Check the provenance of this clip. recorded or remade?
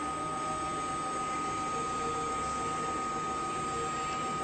recorded